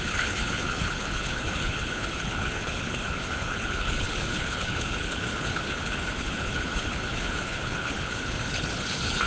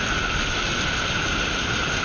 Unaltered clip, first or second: second